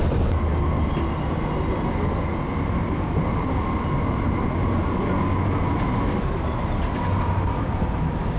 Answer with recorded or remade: recorded